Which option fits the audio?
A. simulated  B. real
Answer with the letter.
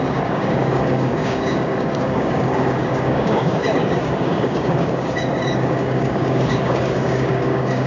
A